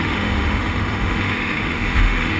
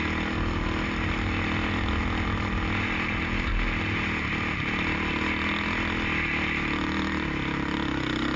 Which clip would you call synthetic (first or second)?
first